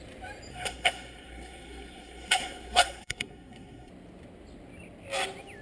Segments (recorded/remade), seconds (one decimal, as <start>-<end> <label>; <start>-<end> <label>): 0.0-0.5 recorded; 0.5-3.9 remade; 3.9-5.6 recorded